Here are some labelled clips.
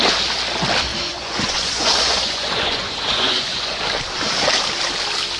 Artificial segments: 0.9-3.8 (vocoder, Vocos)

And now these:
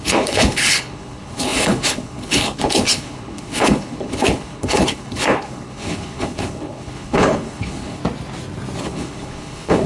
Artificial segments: 0.0-8.0 (codec, HILCodec); 8.8-9.9

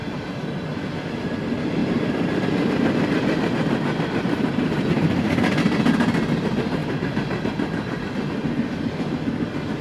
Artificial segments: 1.8-4.9 (vocoder, BigVGAN v2); 6.8-8.1

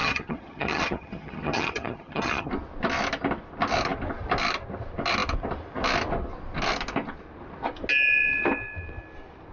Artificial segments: 0.0-2.5 (vocoder, HiFi-GAN)

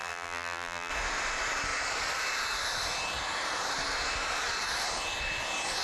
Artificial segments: 0.0-0.9 (vocoder, BigVGAN v2)